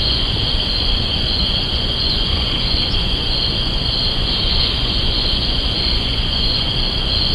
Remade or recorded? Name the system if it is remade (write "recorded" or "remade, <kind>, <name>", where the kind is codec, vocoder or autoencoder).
remade, vocoder, Vocos